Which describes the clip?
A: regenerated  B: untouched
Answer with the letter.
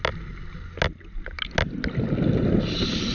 B